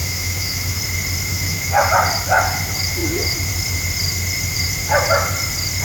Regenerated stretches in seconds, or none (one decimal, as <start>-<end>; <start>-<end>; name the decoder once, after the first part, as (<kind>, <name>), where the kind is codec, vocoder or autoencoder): 0.0-0.8 (autoencoder, DAC-VAE); 1.3-1.9